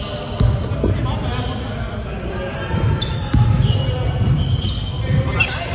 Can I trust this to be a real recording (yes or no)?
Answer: yes